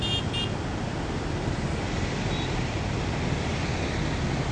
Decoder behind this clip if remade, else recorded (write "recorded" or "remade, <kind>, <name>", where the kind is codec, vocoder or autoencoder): recorded